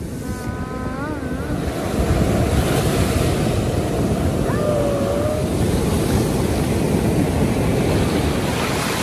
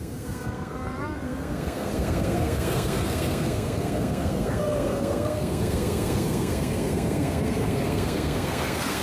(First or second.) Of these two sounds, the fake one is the second